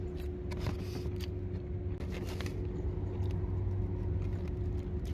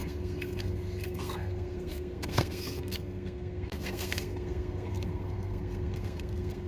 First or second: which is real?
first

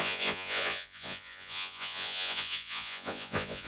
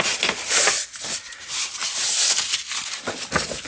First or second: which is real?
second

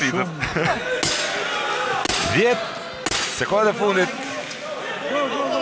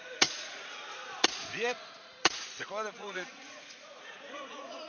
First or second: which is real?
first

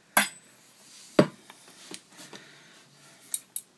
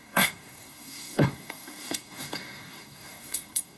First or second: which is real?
first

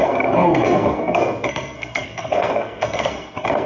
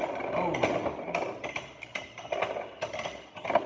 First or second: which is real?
second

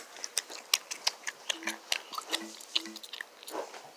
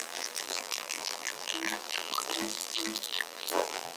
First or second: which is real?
first